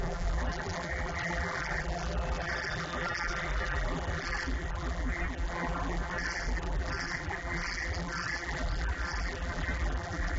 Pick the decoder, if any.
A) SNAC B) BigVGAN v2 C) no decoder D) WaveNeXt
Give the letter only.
B